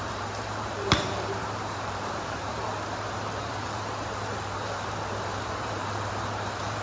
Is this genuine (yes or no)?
no